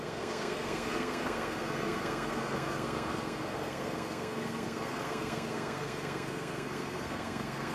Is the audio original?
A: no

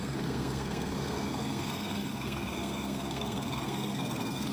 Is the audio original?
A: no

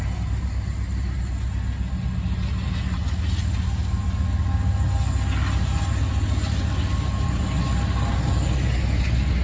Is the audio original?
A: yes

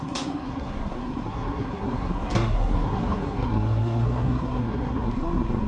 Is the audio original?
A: no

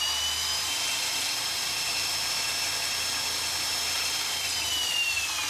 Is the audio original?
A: yes